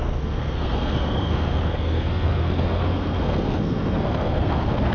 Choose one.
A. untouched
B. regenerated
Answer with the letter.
B